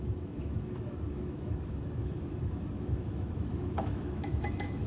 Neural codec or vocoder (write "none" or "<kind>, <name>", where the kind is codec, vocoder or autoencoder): autoencoder, DAC-VAE